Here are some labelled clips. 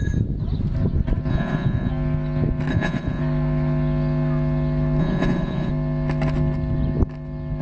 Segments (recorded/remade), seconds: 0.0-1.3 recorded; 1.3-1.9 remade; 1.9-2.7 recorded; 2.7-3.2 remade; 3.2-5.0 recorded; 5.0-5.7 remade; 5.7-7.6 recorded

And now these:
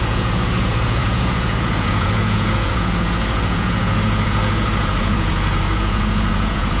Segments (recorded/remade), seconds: 0.0-6.8 remade

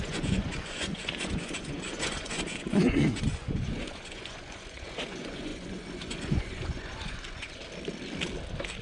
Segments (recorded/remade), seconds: 0.0-7.6 remade; 7.6-8.8 recorded

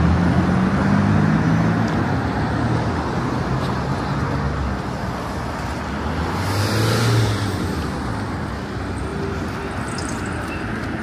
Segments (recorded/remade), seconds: 0.0-11.0 recorded

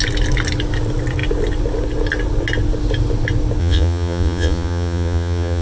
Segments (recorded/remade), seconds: 0.0-3.6 recorded; 3.6-5.6 remade

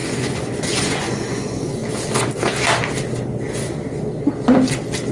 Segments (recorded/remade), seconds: 0.0-1.8 remade; 1.8-5.1 recorded

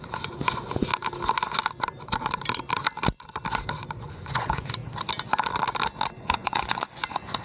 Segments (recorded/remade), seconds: 0.0-0.9 remade; 0.9-4.0 recorded; 4.0-4.8 remade; 4.8-6.1 recorded; 6.1-7.4 remade